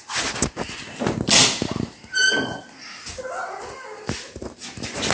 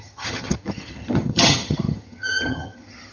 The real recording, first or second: first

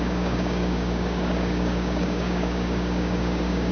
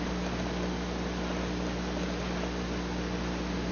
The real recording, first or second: second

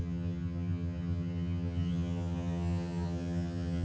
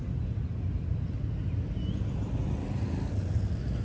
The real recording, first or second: second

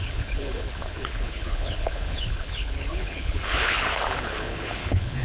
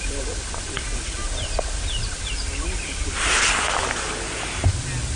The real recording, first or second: second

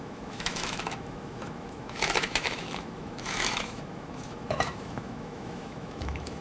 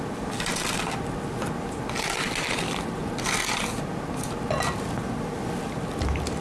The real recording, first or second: second